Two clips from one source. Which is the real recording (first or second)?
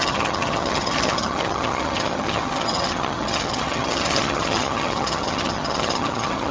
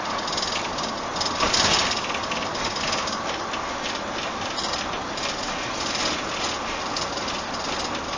second